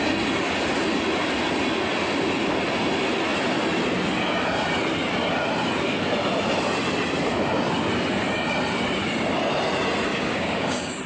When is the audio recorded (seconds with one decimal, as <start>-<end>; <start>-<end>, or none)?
0.0-10.1